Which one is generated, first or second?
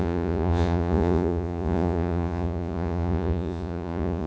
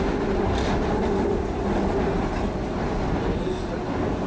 first